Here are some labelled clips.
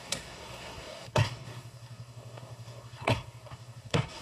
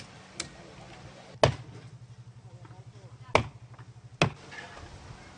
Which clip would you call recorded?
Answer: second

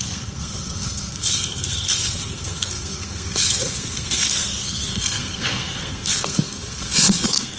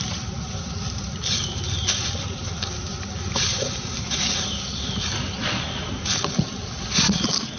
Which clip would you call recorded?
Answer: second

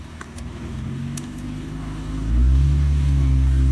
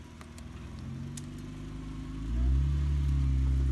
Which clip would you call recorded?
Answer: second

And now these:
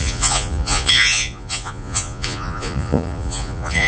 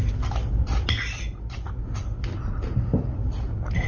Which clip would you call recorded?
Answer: second